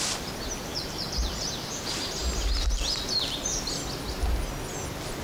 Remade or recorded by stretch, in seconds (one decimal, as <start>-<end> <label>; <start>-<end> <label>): 0.0-0.7 recorded; 0.7-1.4 remade; 1.4-5.2 recorded